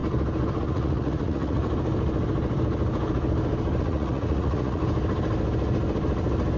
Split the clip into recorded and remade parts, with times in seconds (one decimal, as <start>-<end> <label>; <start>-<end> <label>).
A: 0.0-0.6 recorded; 0.6-1.6 remade; 1.6-3.8 recorded; 3.8-4.8 remade; 4.8-6.6 recorded